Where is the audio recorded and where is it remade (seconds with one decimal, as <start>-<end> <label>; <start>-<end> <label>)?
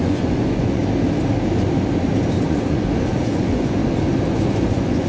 0.0-0.8 remade; 0.8-2.4 recorded; 2.4-3.8 remade; 3.8-4.3 recorded; 4.3-5.1 remade